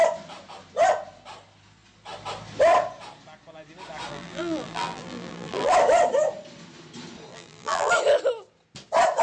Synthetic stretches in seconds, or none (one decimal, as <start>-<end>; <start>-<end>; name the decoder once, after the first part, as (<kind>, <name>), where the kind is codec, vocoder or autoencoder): 4.1-5.7 (vocoder, BigVGAN v2); 7.3-7.9